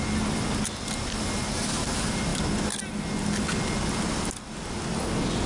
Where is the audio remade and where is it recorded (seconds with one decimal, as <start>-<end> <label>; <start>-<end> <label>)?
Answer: 0.0-5.5 recorded